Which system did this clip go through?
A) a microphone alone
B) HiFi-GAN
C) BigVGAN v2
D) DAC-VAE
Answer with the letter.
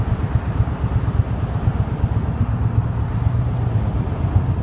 A